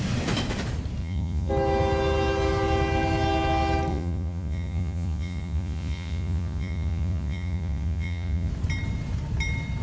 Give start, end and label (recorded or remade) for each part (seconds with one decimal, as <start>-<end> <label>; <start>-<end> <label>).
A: 0.0-1.0 recorded; 1.0-1.5 remade; 1.5-3.9 recorded; 3.9-8.5 remade; 8.5-9.8 recorded